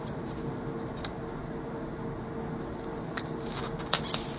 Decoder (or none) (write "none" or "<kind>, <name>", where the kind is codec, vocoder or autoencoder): none